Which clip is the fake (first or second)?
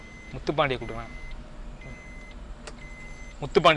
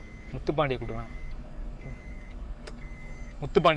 second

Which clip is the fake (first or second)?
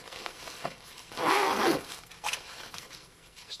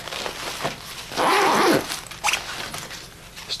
first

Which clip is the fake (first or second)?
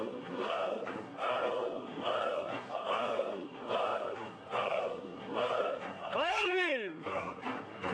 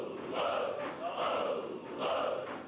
first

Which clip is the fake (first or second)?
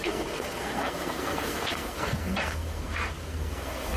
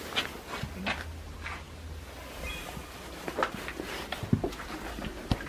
first